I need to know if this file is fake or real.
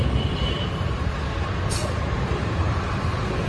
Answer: fake